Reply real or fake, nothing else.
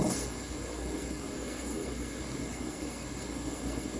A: fake